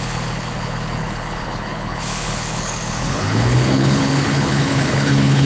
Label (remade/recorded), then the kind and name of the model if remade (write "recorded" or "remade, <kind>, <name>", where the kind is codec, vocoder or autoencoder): remade, codec, HILCodec